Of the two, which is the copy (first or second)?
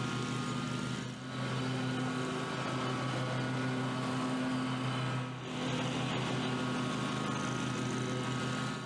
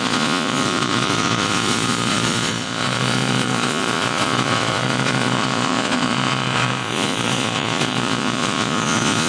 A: second